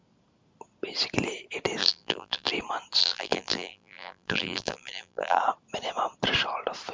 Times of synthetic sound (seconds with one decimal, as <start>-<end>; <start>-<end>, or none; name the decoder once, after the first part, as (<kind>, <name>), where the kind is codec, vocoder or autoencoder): 1.8-2.5 (vocoder, BigVGAN v2); 3.0-5.4